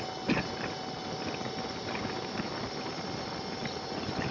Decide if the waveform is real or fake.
real